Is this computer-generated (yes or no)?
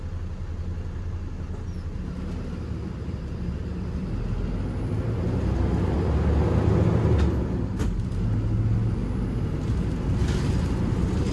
no